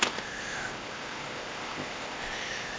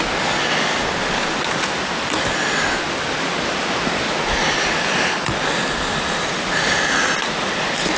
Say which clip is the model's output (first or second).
first